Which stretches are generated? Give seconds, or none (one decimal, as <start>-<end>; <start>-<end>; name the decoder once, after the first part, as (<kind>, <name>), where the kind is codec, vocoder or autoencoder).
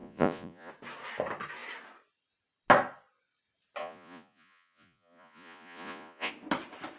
0.0-0.7 (vocoder, Vocos); 3.8-6.3